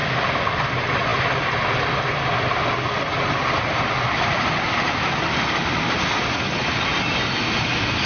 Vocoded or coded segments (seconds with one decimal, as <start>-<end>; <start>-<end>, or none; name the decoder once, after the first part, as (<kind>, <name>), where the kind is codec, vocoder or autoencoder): 0.0-0.6 (vocoder, BigVGAN v2)